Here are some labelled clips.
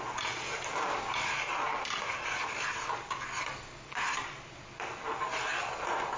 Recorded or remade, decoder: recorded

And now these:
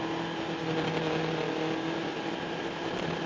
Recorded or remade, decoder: recorded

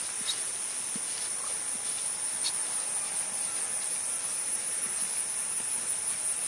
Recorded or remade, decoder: recorded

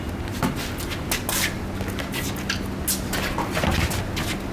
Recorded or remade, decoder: recorded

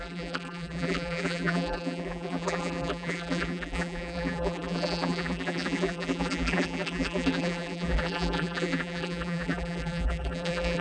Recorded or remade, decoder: remade, vocoder, BigVGAN v2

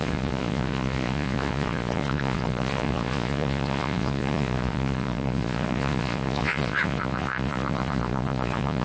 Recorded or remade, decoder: remade, vocoder, Vocos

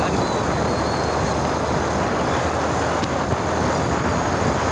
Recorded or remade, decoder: recorded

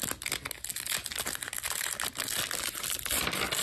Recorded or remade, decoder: recorded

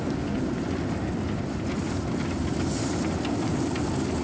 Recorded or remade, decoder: recorded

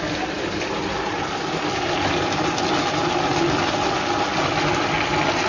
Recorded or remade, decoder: recorded